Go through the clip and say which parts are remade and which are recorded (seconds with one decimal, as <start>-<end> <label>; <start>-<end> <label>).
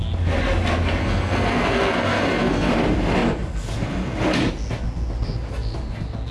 0.0-1.0 recorded; 1.0-2.7 remade; 2.7-6.3 recorded